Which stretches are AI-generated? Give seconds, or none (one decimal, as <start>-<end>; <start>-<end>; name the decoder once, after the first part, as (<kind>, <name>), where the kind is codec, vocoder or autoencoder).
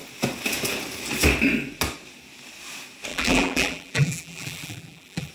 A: 3.1-5.3 (vocoder, BigVGAN v2)